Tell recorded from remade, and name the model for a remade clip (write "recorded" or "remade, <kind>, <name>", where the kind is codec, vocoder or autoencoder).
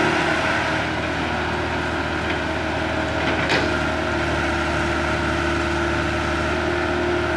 recorded